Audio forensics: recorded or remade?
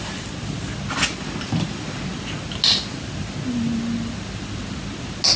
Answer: recorded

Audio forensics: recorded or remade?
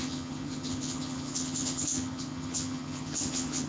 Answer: remade